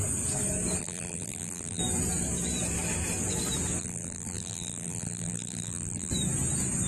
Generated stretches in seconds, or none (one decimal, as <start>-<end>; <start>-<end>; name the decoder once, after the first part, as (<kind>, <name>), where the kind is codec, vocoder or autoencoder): 0.8-1.8 (vocoder, BigVGAN v2); 3.8-6.1